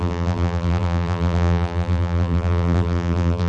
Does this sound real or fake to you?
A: fake